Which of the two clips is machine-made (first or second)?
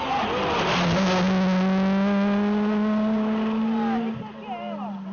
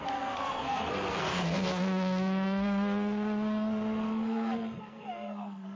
second